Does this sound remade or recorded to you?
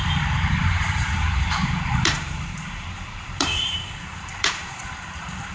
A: remade